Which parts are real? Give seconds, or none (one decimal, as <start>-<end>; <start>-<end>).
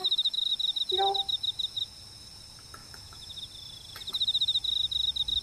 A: 0.5-2.8; 3.4-5.4